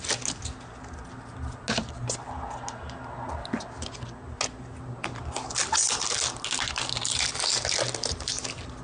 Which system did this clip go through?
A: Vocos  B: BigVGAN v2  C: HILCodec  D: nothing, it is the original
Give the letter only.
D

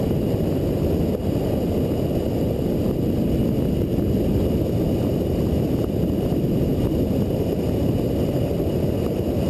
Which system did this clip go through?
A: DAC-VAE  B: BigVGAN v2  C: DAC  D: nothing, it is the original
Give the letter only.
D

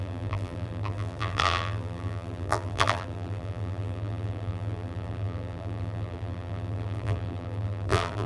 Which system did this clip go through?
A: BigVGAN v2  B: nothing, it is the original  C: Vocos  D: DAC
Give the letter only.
A